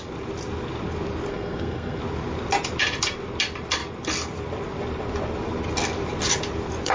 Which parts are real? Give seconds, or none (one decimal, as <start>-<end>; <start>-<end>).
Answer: 0.0-1.3; 2.0-6.9

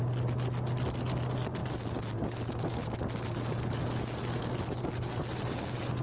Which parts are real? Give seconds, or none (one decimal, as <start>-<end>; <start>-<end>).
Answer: 0.0-6.0

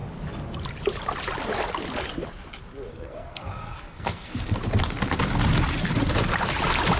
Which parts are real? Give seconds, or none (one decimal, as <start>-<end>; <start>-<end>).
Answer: 0.0-2.9; 4.6-7.0

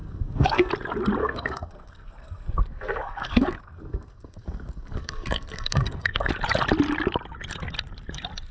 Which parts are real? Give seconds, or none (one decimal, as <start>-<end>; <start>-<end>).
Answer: 0.7-1.2; 6.3-8.5